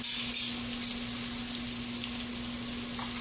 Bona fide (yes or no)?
yes